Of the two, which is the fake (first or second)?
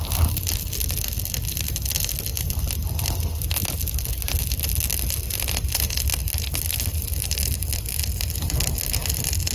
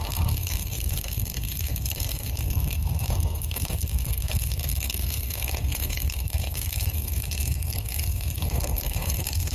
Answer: second